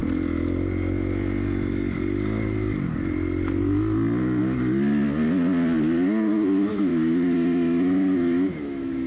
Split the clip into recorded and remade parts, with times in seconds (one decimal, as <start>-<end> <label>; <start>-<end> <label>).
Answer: 0.0-6.9 recorded; 6.9-9.1 remade

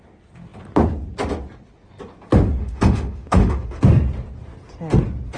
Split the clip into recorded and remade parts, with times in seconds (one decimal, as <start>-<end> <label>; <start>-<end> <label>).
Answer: 0.0-2.6 recorded; 2.6-3.8 remade; 3.8-5.4 recorded